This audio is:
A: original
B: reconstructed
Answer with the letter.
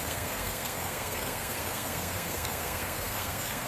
B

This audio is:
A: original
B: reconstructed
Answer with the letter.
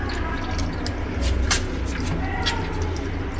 A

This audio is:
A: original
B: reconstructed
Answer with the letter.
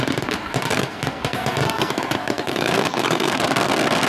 B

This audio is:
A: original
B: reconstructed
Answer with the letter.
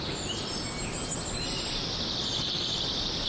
A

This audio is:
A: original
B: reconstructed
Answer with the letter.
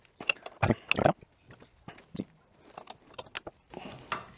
A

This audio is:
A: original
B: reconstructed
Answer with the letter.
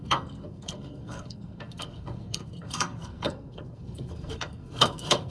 B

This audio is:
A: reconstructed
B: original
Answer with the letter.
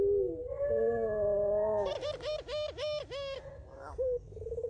B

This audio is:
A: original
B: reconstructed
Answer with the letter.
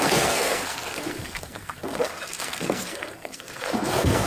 B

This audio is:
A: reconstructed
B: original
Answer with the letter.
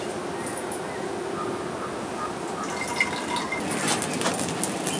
B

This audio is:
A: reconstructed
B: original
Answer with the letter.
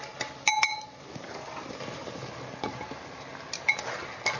B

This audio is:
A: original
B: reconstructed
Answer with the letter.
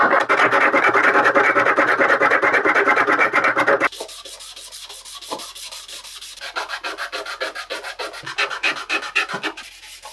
A